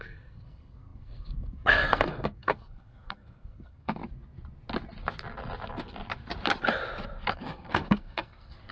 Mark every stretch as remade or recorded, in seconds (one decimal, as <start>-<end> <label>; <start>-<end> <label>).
0.0-4.0 remade; 4.0-7.3 recorded; 7.3-8.7 remade